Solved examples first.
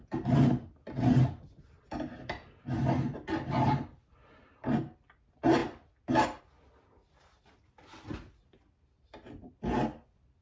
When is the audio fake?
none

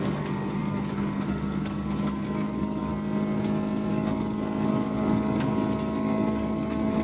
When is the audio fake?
0.0-2.9 (codec, DAC); 3.9-7.0